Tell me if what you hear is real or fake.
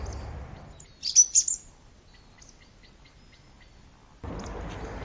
real